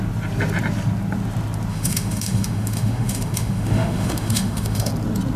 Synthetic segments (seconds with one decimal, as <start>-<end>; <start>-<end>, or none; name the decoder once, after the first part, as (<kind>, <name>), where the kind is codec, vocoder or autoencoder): 1.7-4.9 (autoencoder, DAC-VAE)